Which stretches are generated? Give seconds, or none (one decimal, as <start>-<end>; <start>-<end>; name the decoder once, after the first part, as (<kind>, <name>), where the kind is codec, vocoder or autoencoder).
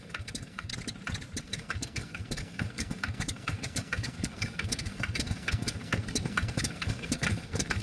0.0-0.7 (codec, SNAC); 1.4-7.8